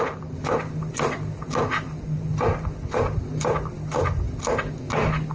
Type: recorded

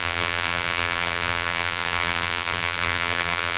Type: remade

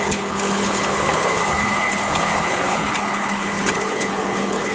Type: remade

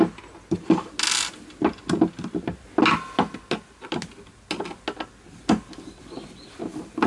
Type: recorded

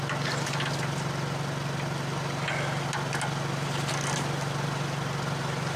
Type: recorded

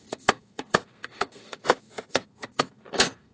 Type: remade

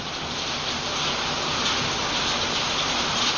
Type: recorded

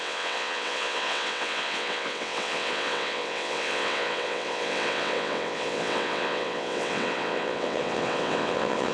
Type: remade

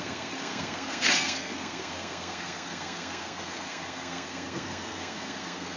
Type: remade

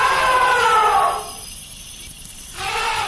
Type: recorded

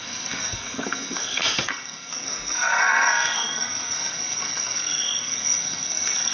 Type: remade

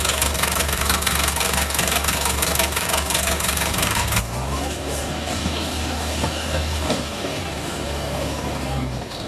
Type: remade